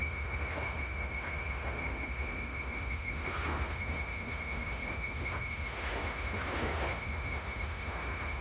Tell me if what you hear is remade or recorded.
remade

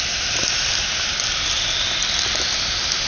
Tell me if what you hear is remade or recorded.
recorded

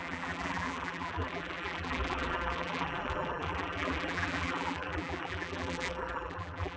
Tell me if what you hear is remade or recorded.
remade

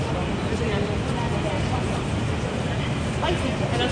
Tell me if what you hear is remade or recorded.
recorded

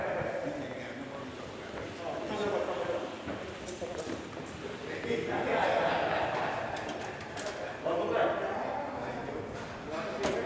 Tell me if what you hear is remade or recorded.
recorded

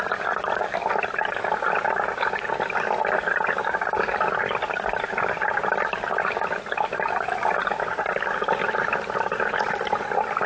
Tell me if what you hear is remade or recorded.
recorded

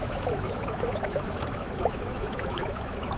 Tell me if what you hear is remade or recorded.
remade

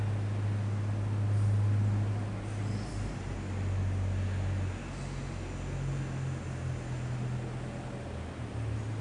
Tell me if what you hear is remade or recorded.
recorded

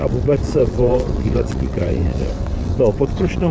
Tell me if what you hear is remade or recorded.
remade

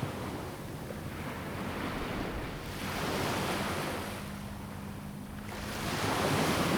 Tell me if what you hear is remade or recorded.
recorded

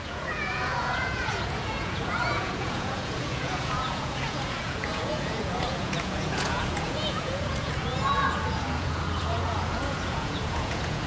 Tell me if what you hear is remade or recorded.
remade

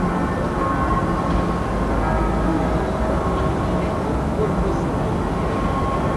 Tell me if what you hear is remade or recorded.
recorded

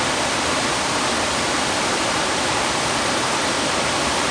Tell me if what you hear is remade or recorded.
remade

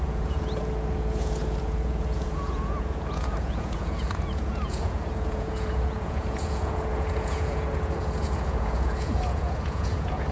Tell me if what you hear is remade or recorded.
remade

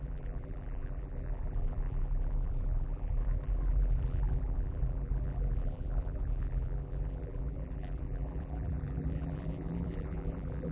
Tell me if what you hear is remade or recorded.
remade